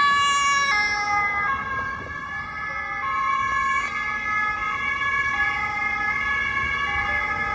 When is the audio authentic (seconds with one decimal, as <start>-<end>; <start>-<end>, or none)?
0.0-1.6; 2.8-7.5